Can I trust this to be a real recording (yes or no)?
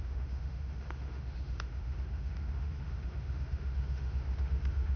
no